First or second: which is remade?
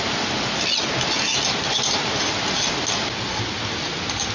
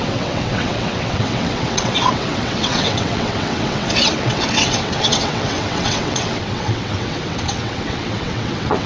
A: second